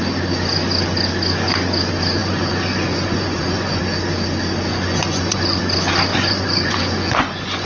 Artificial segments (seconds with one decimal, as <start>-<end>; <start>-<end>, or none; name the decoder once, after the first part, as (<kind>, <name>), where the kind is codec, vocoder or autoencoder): 2.2-3.8 (vocoder, Vocos); 4.7-5.6; 6.1-7.7